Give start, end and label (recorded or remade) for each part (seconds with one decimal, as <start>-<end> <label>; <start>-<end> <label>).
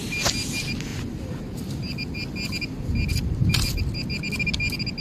0.0-5.0 recorded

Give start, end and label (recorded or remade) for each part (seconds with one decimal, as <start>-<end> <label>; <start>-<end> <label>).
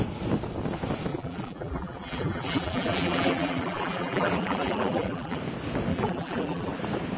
0.0-1.1 recorded; 1.1-5.4 remade; 5.4-5.9 recorded; 5.9-6.7 remade; 6.7-7.2 recorded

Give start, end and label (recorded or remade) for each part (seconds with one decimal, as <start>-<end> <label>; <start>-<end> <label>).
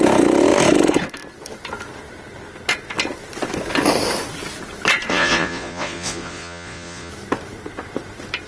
0.0-5.1 recorded; 5.1-7.1 remade; 7.1-8.5 recorded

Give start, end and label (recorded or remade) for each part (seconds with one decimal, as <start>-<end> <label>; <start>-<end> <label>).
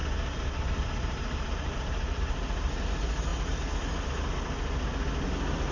0.0-2.8 remade; 2.8-5.7 recorded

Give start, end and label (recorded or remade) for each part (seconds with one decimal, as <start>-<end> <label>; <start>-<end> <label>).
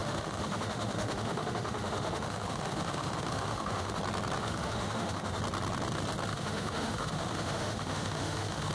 0.0-4.0 remade; 4.0-4.4 recorded; 4.4-5.4 remade; 5.4-6.3 recorded; 6.3-8.7 remade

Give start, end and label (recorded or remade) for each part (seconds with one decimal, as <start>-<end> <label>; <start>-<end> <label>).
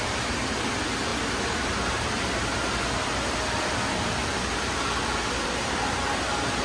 0.0-6.6 recorded